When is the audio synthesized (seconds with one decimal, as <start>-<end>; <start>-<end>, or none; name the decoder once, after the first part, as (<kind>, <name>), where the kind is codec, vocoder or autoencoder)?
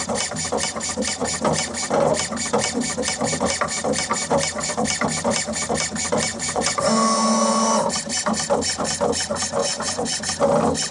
6.3-6.8 (vocoder, Vocos); 9.6-10.2